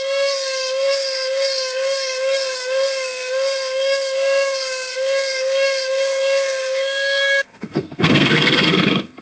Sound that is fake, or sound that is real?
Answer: fake